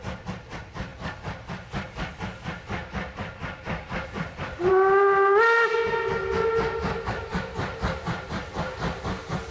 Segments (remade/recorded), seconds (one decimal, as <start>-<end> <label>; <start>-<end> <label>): 0.0-9.5 recorded